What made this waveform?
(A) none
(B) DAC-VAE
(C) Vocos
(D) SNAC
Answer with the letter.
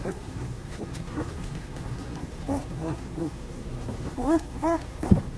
D